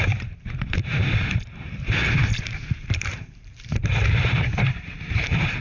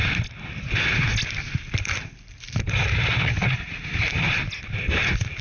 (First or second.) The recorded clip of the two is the second